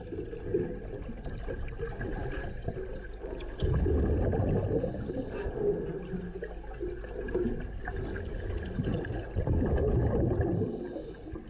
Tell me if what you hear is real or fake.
real